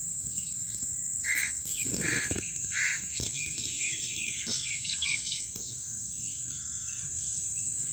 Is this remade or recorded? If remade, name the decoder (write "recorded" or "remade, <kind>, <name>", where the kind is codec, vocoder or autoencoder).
remade, codec, SNAC